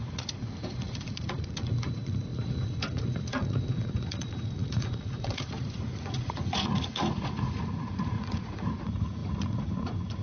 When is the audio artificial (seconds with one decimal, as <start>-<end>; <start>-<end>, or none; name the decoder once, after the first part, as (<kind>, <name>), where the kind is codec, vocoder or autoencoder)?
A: 0.0-10.2 (vocoder, Vocos)